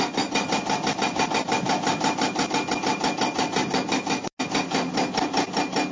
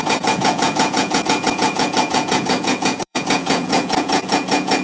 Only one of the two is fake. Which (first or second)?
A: second